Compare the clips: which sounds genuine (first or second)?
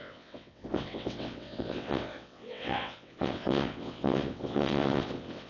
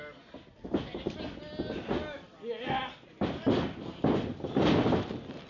second